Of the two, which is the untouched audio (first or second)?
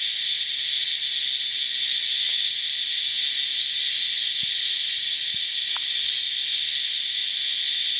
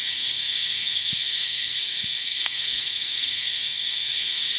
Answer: first